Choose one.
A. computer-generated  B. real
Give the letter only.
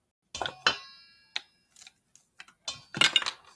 B